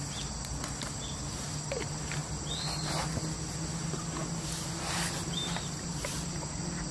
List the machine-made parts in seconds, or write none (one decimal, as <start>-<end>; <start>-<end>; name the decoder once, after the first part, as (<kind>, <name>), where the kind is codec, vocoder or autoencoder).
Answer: none